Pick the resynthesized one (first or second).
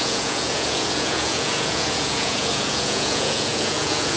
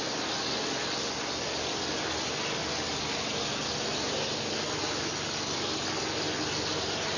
first